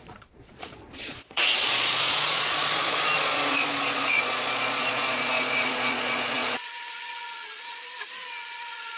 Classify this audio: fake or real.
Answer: fake